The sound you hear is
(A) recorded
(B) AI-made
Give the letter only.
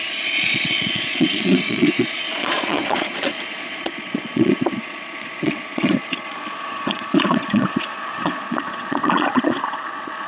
B